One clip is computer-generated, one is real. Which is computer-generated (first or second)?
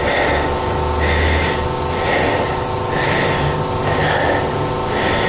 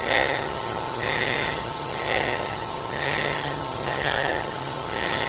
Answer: second